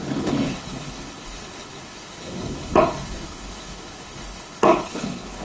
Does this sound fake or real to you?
fake